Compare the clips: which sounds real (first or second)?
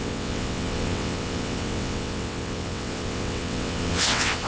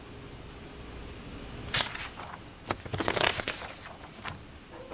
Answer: second